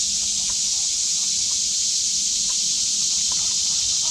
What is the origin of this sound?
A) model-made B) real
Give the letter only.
B